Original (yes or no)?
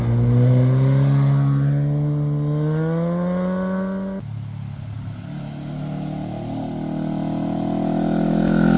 yes